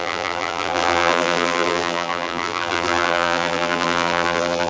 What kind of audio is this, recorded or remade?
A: remade